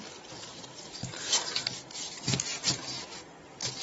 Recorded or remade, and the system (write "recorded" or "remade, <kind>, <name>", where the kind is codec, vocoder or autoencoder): recorded